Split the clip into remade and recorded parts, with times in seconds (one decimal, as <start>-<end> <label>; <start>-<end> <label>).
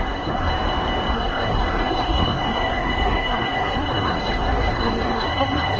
0.0-0.5 remade; 0.5-1.1 recorded; 1.1-5.8 remade